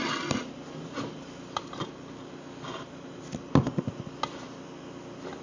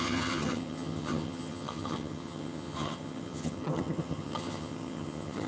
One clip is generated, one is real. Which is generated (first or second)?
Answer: second